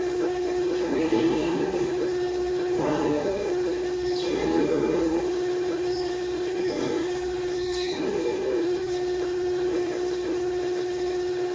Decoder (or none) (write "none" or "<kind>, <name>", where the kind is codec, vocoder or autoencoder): codec, SNAC